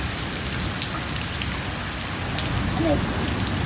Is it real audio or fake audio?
real